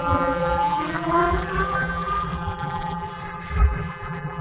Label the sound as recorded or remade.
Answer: remade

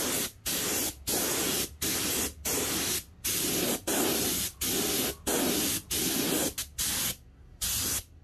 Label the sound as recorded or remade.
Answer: recorded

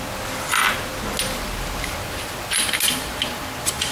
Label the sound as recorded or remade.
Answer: recorded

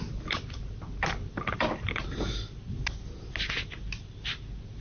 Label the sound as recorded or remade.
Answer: recorded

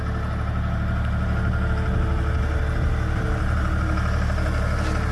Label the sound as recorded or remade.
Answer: recorded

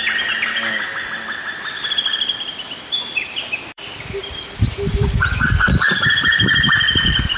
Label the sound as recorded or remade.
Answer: remade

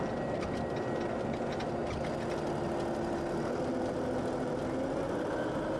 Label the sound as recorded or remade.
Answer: recorded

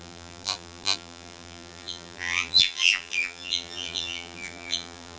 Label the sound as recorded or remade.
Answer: remade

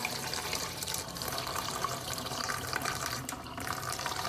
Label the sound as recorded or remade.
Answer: remade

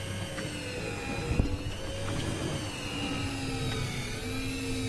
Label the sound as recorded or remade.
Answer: recorded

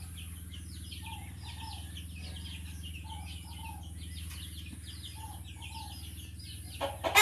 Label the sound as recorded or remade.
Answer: recorded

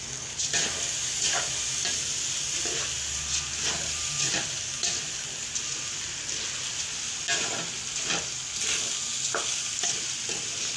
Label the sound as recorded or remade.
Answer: recorded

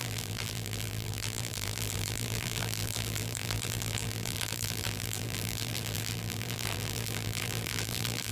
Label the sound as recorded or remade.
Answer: remade